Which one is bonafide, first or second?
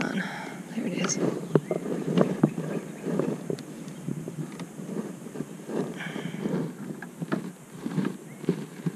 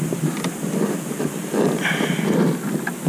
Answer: second